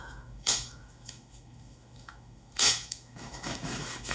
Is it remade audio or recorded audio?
remade